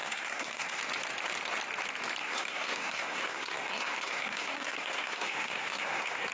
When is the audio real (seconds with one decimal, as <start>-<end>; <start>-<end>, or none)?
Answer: 0.8-2.2